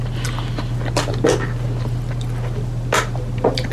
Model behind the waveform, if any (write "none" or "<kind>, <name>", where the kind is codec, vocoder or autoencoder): none